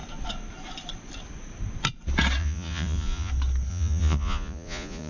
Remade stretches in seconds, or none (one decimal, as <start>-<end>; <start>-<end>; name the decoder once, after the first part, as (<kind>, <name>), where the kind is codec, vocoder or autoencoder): 2.4-3.3 (vocoder, Vocos); 3.7-5.1